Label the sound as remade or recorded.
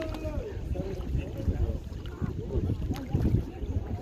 recorded